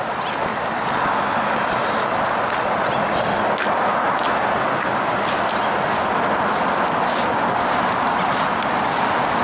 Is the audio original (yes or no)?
yes